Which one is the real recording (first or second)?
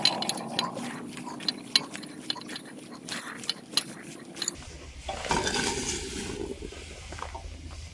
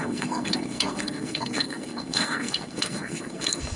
first